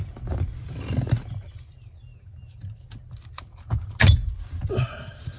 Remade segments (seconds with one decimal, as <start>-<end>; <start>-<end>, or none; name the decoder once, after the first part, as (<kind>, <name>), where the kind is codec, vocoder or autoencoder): none